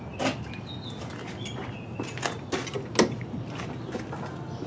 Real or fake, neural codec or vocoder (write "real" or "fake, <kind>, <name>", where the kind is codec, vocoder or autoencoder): real